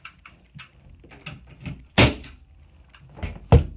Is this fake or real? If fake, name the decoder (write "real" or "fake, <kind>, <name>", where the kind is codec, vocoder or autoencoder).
real